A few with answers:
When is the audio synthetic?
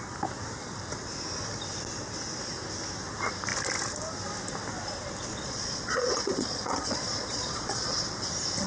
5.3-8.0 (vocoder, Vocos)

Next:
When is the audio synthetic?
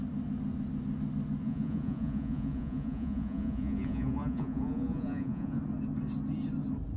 1.4-5.6 (vocoder, Vocos)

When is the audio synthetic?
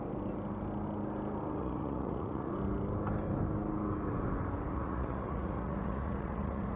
1.6-2.5 (vocoder, Vocos); 4.7-6.8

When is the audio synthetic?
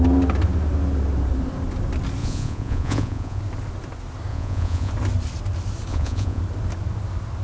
2.2-3.4 (vocoder, Vocos); 4.3-4.9; 5.9-6.4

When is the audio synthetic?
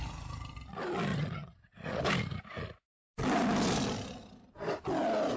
1.1-2.0 (vocoder, Vocos)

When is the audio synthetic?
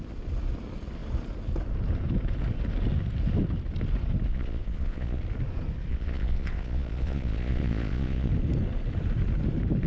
4.3-5.2 (vocoder, Vocos); 5.9-8.3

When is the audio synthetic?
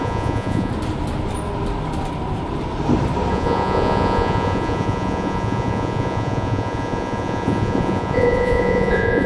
0.0-0.7 (vocoder, Vocos); 3.3-9.3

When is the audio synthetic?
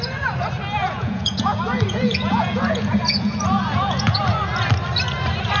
0.8-4.2 (vocoder, Vocos)